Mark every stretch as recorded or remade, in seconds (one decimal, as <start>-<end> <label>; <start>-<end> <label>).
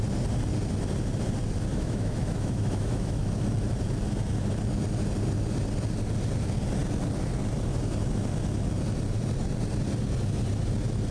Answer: 0.0-1.7 recorded; 1.7-3.3 remade; 3.3-11.1 recorded